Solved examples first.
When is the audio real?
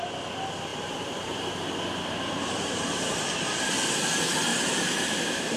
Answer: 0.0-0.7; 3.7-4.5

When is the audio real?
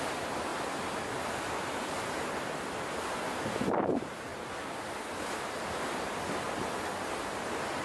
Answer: 0.5-1.7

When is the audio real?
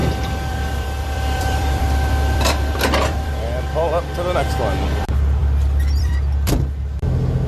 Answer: 3.3-5.4; 7.0-7.5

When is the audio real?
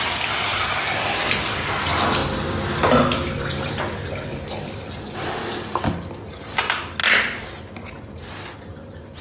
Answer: 0.0-0.5; 1.0-9.2